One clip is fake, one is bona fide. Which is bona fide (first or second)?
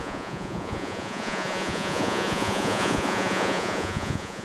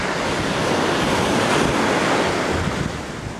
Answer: second